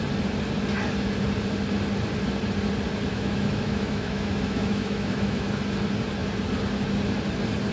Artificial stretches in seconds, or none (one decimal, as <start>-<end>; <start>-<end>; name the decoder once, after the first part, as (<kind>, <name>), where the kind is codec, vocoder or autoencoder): 3.1-5.6 (autoencoder, DAC-VAE)

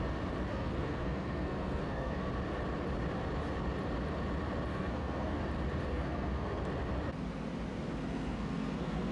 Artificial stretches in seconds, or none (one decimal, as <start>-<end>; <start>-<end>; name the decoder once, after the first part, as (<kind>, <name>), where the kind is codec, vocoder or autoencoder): 0.5-2.3 (codec, SNAC); 4.7-5.4; 5.9-6.6; 7.7-9.1

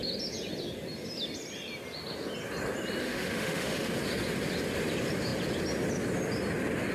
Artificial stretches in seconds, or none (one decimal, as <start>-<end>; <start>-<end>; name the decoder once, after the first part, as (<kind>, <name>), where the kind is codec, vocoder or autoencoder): 3.0-3.9 (autoencoder, DAC-VAE)

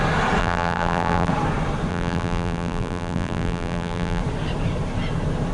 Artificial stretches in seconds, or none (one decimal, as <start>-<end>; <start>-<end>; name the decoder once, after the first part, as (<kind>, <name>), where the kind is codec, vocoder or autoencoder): 0.4-1.3 (vocoder, BigVGAN v2); 1.9-4.2